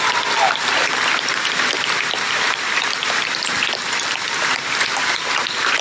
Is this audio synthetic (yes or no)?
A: yes